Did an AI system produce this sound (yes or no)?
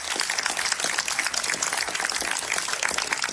no